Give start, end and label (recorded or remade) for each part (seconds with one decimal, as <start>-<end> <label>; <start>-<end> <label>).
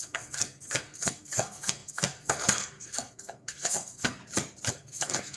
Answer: 0.0-4.2 remade; 4.2-4.7 recorded; 4.7-5.4 remade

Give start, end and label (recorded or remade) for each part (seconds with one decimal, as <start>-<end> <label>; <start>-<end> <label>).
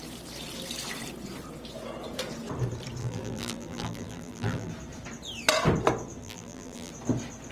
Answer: 0.0-3.0 recorded; 3.0-4.7 remade; 4.7-6.2 recorded; 6.2-6.9 remade; 6.9-7.5 recorded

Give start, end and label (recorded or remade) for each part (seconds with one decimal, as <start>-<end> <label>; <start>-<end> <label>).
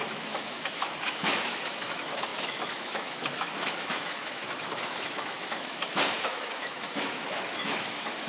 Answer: 0.0-8.3 remade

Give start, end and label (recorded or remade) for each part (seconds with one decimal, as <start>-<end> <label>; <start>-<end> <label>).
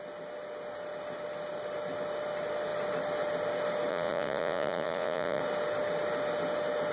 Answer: 0.0-3.9 recorded; 3.9-5.4 remade; 5.4-6.9 recorded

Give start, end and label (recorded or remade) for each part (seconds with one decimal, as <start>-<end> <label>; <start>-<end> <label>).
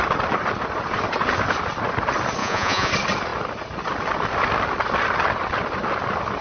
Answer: 0.0-2.4 recorded; 2.4-2.9 remade; 2.9-6.4 recorded